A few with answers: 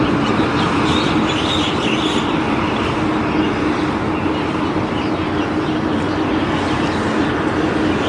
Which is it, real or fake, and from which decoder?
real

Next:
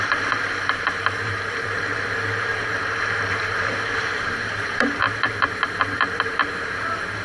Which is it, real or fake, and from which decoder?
fake, vocoder, BigVGAN v2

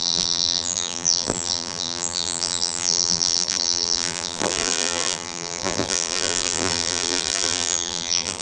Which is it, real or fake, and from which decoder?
fake, vocoder, BigVGAN v2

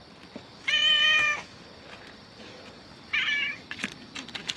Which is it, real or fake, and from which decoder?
fake, vocoder, BigVGAN v2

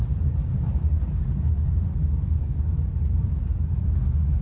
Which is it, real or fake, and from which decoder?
fake, vocoder, BigVGAN v2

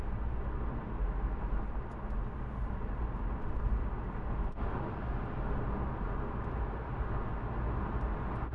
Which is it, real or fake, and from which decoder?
real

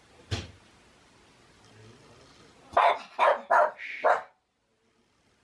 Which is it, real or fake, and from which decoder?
real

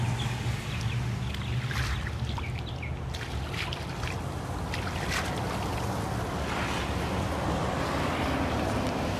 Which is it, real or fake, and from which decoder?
real